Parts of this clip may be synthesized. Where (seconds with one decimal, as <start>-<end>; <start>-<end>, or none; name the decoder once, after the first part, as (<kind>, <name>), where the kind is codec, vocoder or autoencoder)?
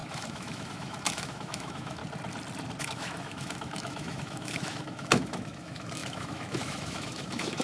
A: 0.0-2.0 (autoencoder, DAC-VAE); 2.8-7.6